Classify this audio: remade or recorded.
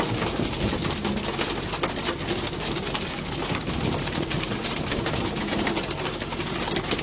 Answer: recorded